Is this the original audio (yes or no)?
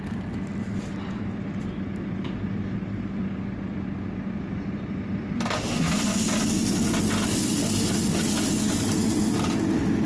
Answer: yes